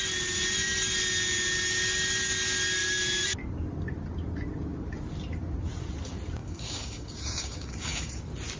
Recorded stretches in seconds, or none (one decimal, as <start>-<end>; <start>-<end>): 0.0-6.4; 8.2-8.6